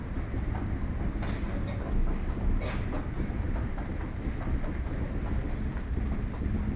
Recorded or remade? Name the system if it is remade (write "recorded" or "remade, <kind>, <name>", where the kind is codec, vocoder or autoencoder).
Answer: recorded